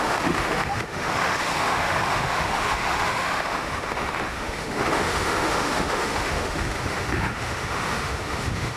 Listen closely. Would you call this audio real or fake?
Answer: fake